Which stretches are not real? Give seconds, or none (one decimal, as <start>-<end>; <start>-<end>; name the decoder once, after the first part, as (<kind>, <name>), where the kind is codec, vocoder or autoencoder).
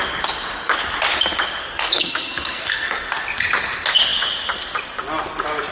1.6-3.1 (codec, SNAC)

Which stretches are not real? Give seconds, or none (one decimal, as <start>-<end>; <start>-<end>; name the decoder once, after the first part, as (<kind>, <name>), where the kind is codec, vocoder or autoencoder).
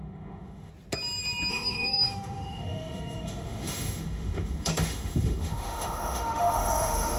0.0-0.7 (autoencoder, DAC-VAE); 1.5-7.2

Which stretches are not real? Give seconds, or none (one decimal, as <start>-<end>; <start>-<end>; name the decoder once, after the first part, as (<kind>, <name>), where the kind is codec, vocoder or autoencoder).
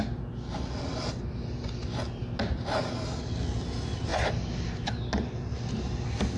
none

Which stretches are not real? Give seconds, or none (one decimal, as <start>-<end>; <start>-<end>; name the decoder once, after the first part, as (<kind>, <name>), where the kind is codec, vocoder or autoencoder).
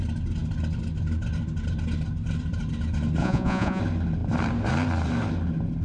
3.2-3.8 (vocoder, Vocos)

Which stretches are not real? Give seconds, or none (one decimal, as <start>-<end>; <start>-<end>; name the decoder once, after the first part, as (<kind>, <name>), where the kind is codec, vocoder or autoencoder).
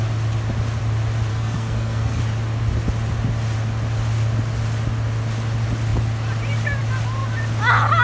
1.3-2.2 (codec, SNAC)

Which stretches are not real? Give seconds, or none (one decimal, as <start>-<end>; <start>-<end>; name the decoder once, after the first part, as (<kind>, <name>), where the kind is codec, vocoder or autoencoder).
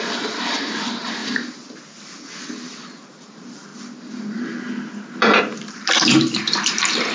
0.0-1.2 (vocoder, BigVGAN v2); 3.1-3.7; 5.4-7.1